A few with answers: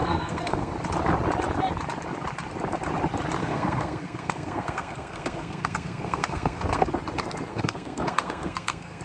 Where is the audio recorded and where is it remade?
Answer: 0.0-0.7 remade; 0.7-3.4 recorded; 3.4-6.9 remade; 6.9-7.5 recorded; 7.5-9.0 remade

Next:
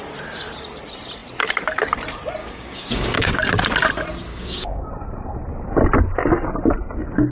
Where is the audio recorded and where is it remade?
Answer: 0.0-2.4 recorded; 2.4-3.3 remade; 3.3-4.3 recorded; 4.3-4.9 remade; 4.9-7.3 recorded

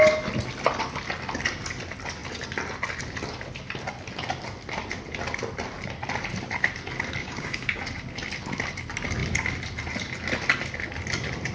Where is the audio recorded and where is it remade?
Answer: 0.0-7.2 recorded; 7.2-7.8 remade; 7.8-11.5 recorded